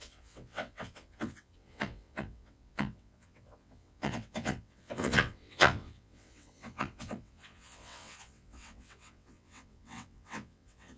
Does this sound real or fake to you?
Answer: fake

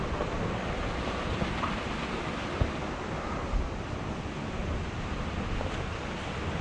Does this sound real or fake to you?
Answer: real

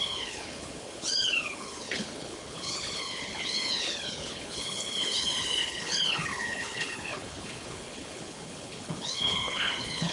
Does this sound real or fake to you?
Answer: fake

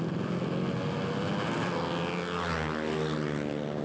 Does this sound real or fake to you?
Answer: real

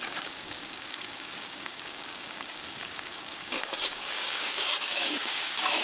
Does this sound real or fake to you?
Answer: fake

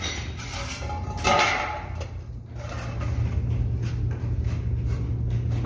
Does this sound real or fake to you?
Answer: real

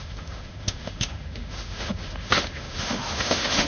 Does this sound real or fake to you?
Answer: fake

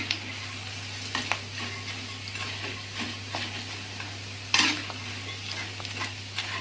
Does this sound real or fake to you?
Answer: real